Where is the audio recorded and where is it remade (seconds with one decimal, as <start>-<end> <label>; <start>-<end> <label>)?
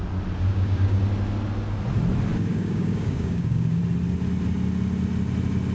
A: 0.0-0.5 recorded; 0.5-1.0 remade; 1.0-2.5 recorded; 2.5-3.8 remade; 3.8-5.7 recorded